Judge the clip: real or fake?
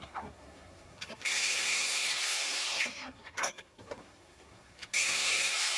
fake